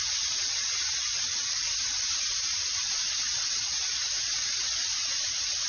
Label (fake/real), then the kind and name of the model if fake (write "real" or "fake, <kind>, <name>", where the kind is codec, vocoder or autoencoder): real